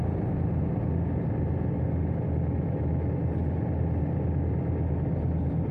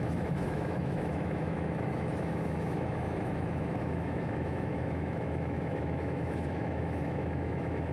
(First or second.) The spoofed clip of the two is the second